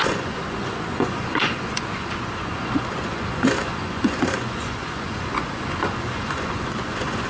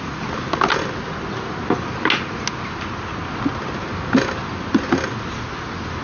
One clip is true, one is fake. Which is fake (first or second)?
first